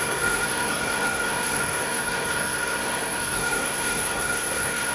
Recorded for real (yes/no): no